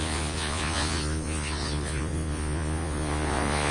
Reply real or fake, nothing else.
fake